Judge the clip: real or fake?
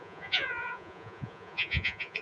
fake